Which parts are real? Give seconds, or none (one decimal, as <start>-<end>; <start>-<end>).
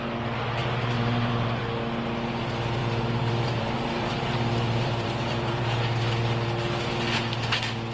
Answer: 0.0-0.6; 1.6-2.8; 5.6-7.9